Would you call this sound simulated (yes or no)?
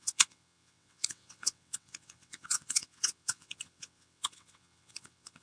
yes